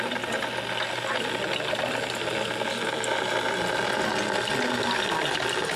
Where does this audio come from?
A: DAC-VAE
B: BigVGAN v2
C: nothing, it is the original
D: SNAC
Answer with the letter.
C